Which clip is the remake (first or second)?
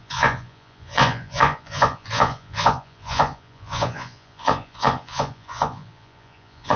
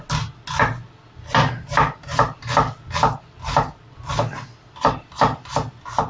first